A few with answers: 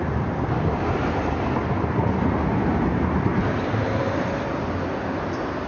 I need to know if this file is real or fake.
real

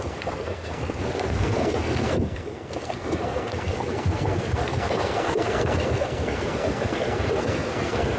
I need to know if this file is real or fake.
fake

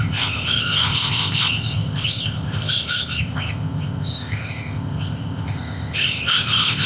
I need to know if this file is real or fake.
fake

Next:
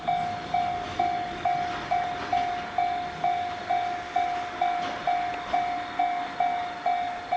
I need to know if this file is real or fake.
real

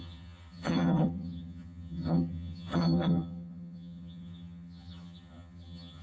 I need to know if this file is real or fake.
fake